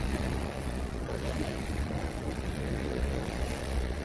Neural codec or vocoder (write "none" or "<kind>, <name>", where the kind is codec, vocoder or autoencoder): vocoder, Vocos